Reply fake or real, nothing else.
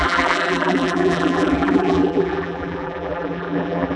fake